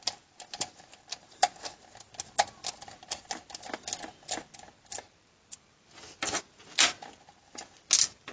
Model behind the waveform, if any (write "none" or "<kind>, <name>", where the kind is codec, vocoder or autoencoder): none